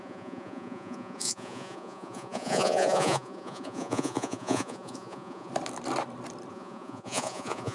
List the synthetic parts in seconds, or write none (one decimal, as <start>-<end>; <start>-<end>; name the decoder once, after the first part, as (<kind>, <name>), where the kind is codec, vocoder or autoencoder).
0.0-5.5 (vocoder, Vocos); 6.5-7.7